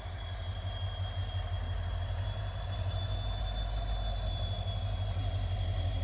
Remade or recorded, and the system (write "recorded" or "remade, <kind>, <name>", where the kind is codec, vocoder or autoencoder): recorded